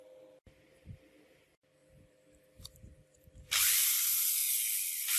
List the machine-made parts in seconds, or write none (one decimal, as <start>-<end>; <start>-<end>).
1.8-3.7

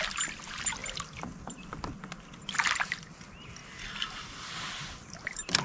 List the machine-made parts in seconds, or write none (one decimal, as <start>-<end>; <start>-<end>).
0.8-2.0

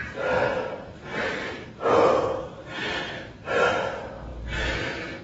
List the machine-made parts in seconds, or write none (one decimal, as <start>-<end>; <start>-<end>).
1.1-1.7

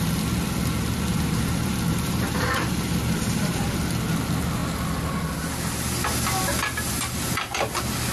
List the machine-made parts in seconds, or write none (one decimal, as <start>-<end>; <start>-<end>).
1.1-3.8

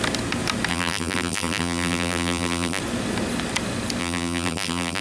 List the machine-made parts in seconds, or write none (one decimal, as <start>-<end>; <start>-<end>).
0.7-2.8; 4.0-5.0